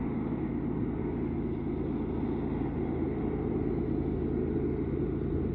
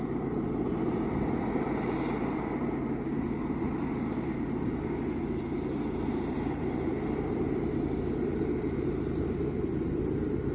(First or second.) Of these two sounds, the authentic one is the first